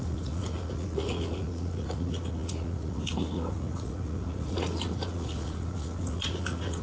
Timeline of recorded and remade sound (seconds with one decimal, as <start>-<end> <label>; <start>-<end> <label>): 0.0-6.8 remade